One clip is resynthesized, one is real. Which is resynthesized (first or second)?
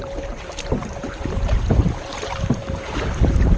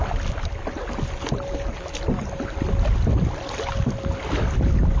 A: first